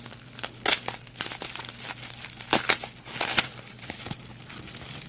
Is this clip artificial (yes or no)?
no